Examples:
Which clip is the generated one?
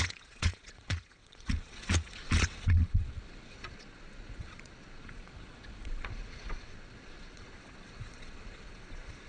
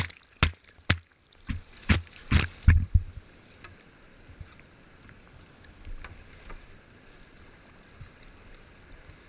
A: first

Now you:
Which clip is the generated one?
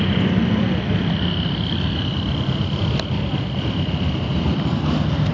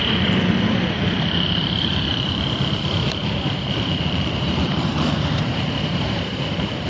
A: second